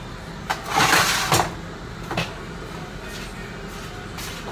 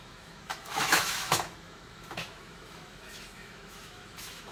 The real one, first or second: first